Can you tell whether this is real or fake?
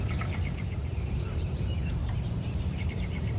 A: fake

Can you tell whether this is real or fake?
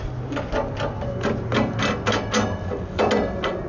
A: real